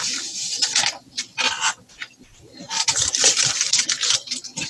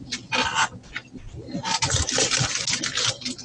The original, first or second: second